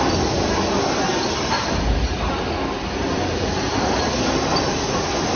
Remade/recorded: recorded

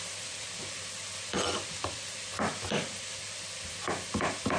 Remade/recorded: remade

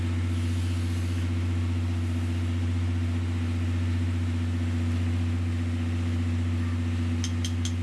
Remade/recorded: recorded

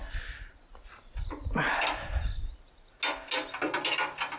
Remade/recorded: recorded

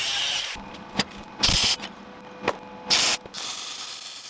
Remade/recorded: recorded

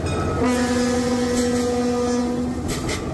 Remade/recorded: recorded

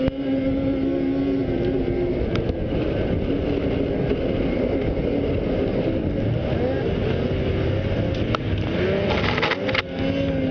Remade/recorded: recorded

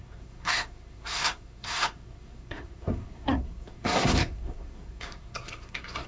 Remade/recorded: remade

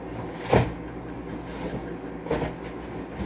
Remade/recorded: recorded